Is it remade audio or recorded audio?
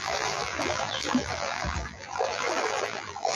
remade